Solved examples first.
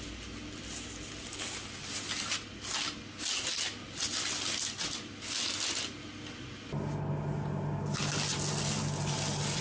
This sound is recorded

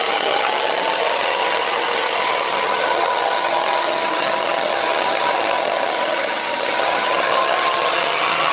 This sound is remade